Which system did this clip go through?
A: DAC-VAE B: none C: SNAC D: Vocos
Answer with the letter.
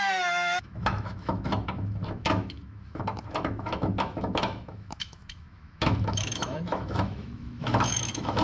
A